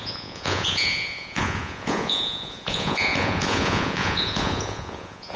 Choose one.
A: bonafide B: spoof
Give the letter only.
B